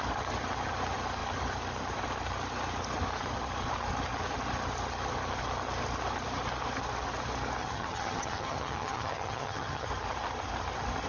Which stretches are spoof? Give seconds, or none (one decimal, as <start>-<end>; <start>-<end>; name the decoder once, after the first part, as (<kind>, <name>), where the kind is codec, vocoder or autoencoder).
7.6-9.9 (vocoder, HiFi-GAN)